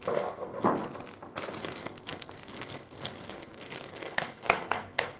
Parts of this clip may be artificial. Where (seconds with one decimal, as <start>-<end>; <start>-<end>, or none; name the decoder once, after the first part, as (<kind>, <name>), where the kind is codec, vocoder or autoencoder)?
0.0-0.8 (codec, SNAC); 1.6-5.2